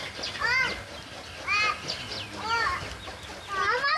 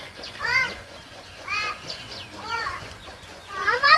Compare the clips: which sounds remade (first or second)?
second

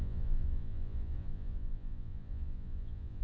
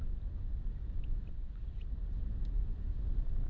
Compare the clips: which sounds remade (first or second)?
first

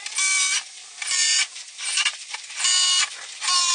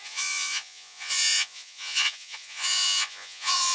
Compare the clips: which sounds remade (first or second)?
second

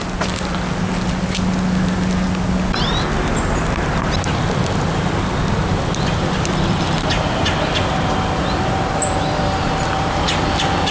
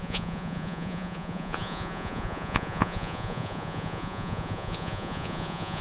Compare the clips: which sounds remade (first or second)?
second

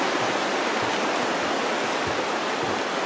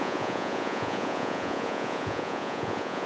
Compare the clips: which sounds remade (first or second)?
second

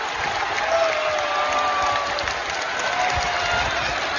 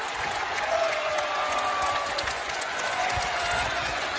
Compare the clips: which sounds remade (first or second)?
second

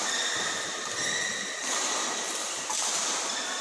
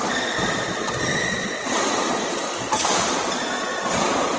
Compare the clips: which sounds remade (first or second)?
second